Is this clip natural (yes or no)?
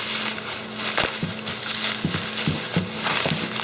yes